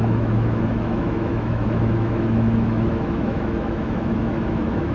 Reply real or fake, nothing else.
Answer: fake